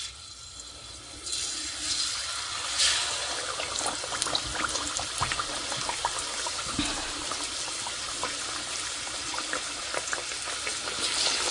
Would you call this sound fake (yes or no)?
no